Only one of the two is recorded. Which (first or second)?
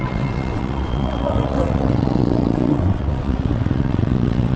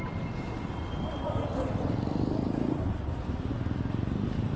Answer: second